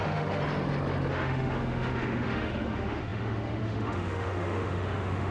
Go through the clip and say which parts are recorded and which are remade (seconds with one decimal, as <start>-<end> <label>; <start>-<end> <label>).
0.0-0.4 remade; 0.4-1.1 recorded; 1.1-5.3 remade